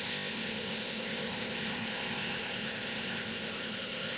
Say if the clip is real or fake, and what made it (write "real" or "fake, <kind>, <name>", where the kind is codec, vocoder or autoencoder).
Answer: fake, codec, ZipCodec